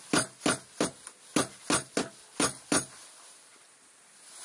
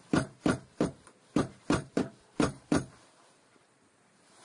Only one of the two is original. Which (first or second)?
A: first